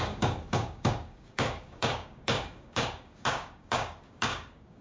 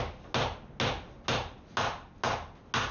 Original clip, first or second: second